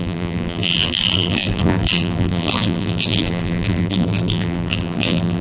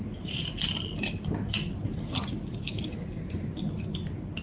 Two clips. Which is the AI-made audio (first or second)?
first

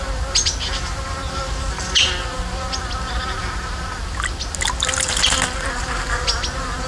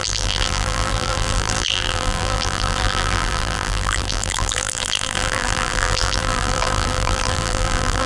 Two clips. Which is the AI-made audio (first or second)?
second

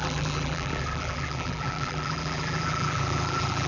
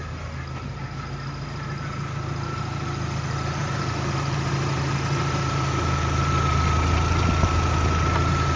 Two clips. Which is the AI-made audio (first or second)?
first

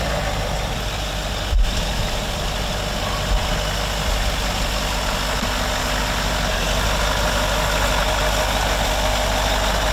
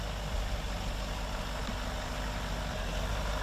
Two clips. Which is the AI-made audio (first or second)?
second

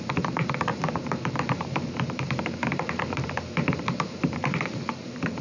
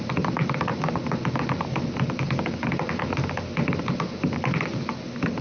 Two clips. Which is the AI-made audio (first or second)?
first